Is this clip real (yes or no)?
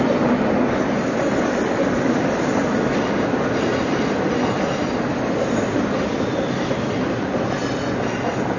yes